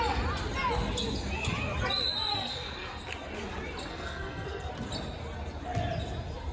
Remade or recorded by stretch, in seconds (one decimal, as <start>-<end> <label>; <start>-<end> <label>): 0.0-2.3 recorded; 2.3-3.0 remade; 3.0-3.9 recorded; 3.9-4.7 remade; 4.7-6.5 recorded